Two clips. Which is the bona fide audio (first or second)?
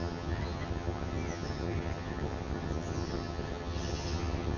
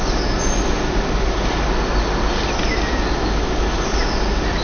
second